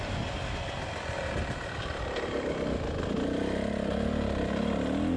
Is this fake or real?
real